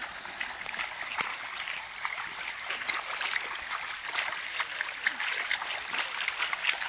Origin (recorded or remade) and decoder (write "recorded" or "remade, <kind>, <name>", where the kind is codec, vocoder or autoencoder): recorded